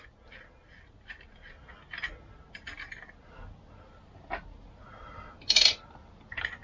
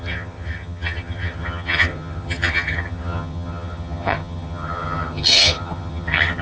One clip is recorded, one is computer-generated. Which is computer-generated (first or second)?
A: second